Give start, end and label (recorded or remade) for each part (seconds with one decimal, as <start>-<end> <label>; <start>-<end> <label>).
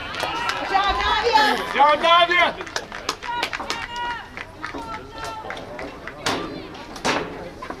0.0-2.4 remade; 2.4-7.8 recorded